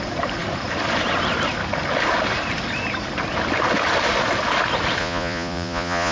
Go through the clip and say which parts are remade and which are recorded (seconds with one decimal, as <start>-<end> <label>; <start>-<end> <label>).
0.0-5.0 recorded; 5.0-6.1 remade